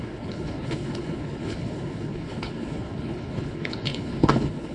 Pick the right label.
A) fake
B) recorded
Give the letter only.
A